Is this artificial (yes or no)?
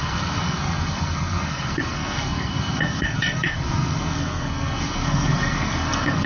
yes